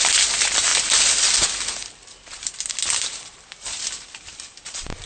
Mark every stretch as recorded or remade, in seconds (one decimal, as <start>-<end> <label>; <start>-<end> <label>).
0.0-5.1 recorded